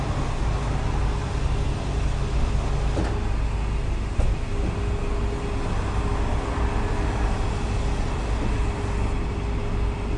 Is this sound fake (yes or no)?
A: no